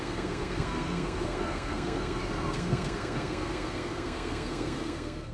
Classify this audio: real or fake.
fake